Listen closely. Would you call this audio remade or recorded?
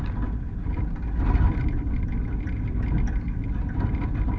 recorded